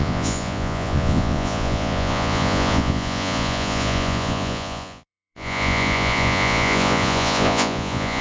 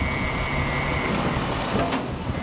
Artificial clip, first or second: first